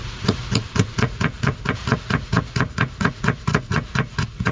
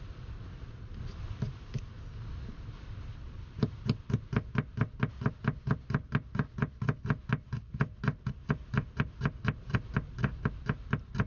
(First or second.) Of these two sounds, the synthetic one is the first